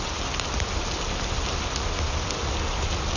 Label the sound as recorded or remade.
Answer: recorded